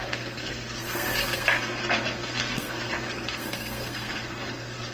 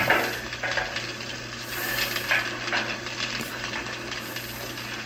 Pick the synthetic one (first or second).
first